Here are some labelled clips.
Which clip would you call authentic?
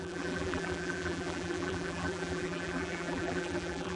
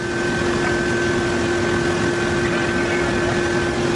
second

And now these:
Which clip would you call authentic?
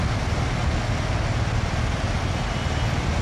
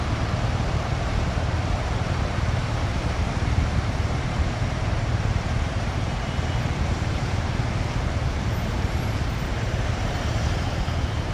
first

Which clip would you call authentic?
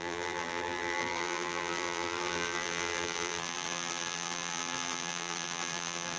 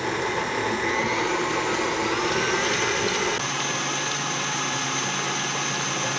second